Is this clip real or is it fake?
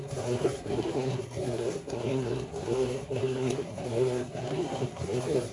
fake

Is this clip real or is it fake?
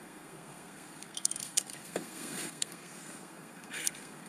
fake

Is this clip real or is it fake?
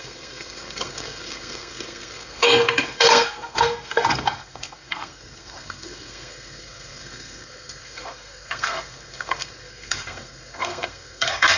fake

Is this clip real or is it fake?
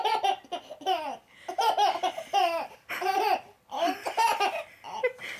real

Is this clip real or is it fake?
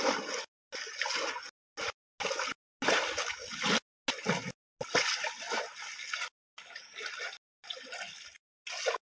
real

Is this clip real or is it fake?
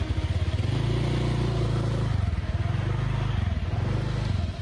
real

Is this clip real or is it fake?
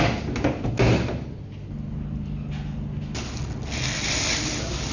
real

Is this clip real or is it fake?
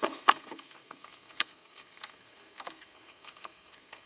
fake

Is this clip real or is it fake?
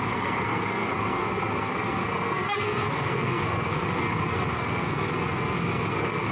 fake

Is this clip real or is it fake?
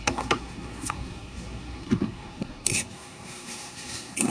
fake